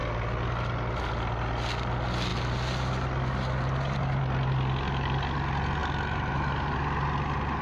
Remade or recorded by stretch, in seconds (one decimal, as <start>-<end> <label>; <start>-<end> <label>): 0.0-7.6 recorded